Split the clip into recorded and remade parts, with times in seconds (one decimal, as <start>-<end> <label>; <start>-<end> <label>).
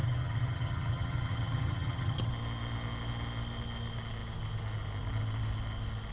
0.0-2.3 remade; 2.3-6.1 recorded